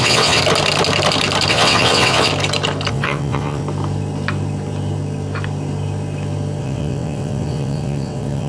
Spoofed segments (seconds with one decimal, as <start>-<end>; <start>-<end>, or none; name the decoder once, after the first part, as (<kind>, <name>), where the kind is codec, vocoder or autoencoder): 0.0-0.4 (vocoder, WaveNeXt); 1.5-2.3; 2.9-3.6; 6.6-8.5

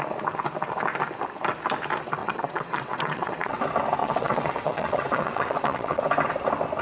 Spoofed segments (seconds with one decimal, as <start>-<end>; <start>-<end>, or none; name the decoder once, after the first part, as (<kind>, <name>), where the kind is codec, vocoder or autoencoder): 2.2-3.6 (vocoder, WaveNeXt); 4.0-6.0

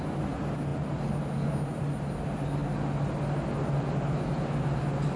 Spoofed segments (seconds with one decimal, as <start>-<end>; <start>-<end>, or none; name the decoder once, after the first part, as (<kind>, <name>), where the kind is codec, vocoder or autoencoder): none

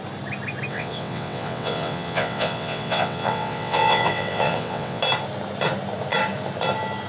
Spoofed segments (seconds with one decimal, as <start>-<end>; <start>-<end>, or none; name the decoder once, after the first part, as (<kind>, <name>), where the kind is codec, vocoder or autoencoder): 0.7-5.0 (vocoder, WaveNeXt)